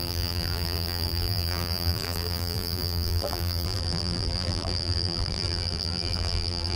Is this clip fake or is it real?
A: fake